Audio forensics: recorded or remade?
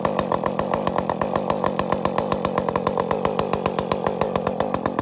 recorded